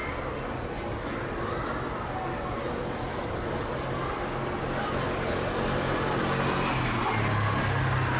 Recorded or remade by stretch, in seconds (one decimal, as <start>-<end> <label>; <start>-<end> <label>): 0.0-8.2 recorded